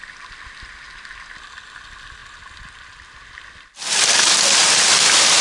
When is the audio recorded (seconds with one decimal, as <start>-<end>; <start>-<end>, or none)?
0.0-5.4